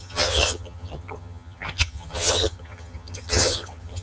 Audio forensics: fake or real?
fake